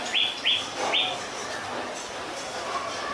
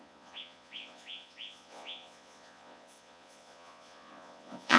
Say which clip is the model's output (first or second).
second